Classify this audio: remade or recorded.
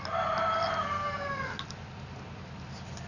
recorded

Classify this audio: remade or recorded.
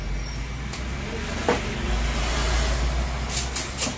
recorded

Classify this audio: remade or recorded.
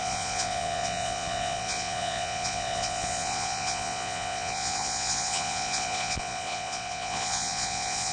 remade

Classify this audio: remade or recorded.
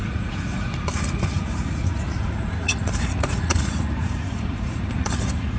remade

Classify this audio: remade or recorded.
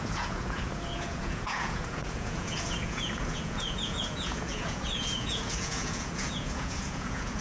remade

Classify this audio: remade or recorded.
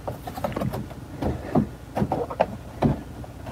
recorded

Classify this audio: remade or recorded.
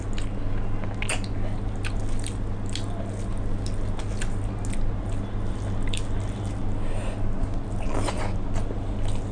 recorded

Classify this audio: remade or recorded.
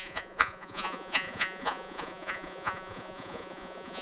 remade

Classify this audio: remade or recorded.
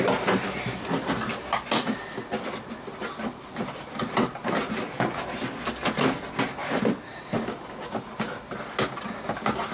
recorded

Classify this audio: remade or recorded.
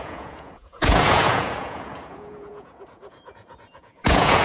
remade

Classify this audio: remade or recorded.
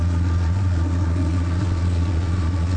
remade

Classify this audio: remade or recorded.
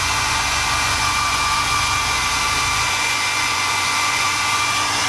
remade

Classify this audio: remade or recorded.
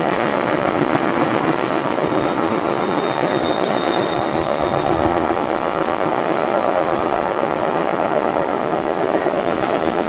remade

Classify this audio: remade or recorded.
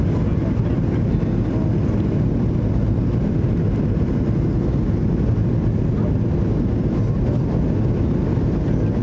recorded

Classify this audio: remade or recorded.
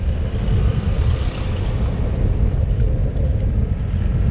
recorded